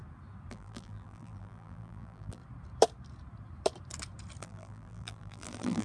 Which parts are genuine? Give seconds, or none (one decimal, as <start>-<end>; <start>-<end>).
0.0-0.5; 2.4-4.4